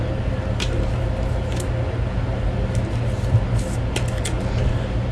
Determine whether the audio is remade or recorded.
recorded